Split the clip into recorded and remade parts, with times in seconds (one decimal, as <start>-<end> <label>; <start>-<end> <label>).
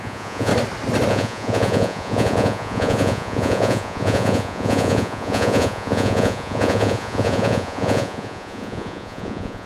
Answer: 0.0-0.5 remade; 0.5-1.1 recorded; 1.1-9.7 remade